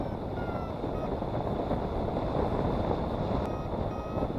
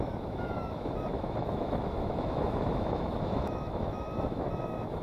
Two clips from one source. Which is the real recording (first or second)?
first